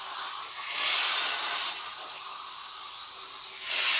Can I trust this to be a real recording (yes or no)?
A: yes